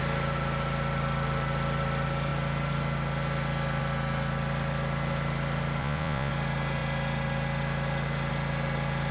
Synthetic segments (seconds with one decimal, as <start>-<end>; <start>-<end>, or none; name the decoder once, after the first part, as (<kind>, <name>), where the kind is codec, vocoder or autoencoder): 5.8-6.3 (vocoder, Vocos)